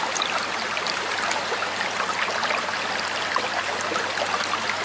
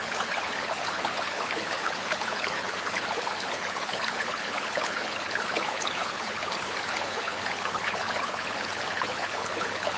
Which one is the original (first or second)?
first